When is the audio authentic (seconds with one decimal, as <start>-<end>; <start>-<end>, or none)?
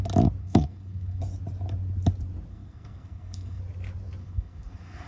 0.0-0.4; 1.2-2.5; 3.6-4.2